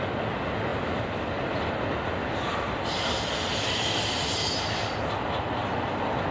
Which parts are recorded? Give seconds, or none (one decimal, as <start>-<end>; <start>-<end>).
0.0-6.3